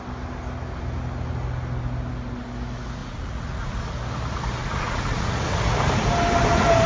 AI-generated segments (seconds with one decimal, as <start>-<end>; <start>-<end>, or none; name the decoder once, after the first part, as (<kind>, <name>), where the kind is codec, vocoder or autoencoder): 3.0-3.8 (vocoder, Vocos); 4.6-5.4